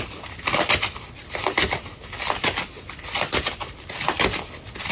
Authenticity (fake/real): real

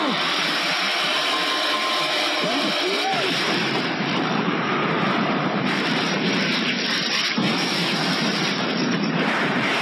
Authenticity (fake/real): fake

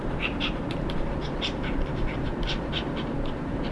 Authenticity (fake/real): fake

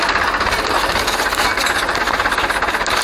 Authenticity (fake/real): real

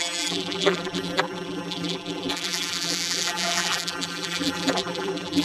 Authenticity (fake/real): fake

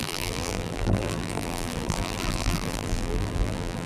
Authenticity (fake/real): fake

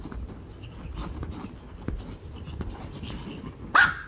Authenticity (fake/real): real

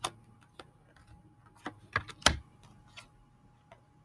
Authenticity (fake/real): real